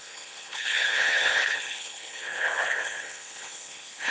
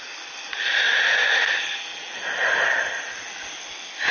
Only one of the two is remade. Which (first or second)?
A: first